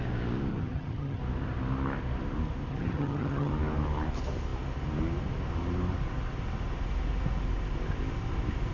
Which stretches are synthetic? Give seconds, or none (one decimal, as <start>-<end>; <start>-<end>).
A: 0.5-1.2; 2.7-3.5